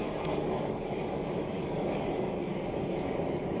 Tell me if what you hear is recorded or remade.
remade